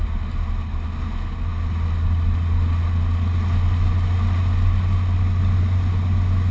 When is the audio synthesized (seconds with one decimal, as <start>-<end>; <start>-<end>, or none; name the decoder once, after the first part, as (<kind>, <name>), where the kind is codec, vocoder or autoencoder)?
none